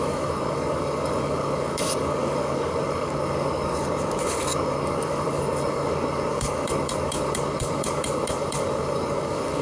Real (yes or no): no